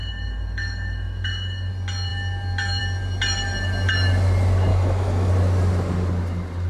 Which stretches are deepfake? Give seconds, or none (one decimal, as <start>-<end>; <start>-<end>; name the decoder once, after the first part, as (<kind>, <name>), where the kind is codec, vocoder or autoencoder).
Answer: 0.0-1.7 (autoencoder, DAC-VAE); 4.7-5.3